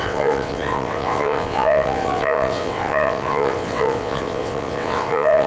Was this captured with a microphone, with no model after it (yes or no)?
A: no